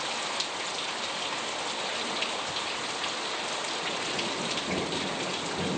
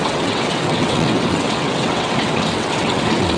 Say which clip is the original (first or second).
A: first